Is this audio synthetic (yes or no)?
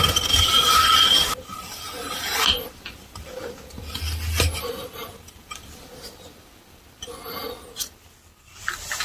no